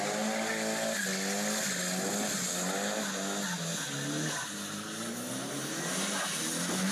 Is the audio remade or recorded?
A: recorded